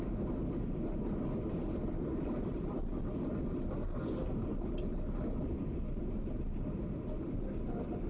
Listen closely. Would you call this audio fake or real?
real